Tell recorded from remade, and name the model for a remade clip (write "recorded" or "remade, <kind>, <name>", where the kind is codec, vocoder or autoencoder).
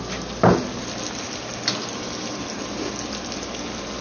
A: recorded